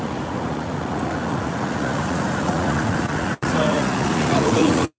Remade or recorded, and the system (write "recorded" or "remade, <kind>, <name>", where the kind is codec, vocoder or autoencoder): remade, vocoder, Vocos